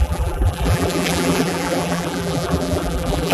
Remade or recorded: remade